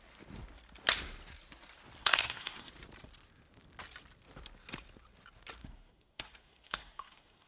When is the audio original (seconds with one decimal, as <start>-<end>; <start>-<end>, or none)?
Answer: 0.0-2.0; 2.7-5.6